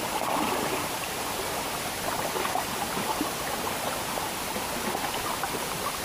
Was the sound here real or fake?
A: real